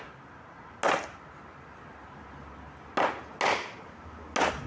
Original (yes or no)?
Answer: yes